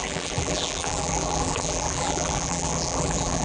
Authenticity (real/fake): fake